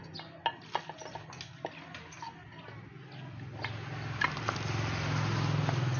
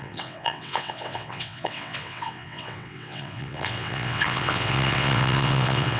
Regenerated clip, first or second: second